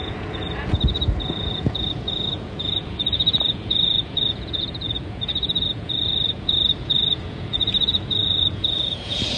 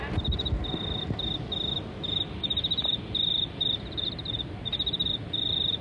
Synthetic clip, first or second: first